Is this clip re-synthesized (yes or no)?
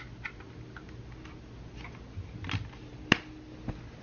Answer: no